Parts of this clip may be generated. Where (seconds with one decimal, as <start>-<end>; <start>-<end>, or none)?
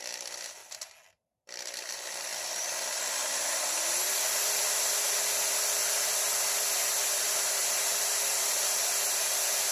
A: 0.0-0.6; 1.1-9.7